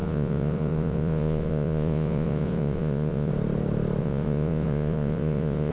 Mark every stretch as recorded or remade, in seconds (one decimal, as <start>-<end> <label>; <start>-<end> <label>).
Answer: 0.0-3.3 remade; 3.3-4.0 recorded; 4.0-5.7 remade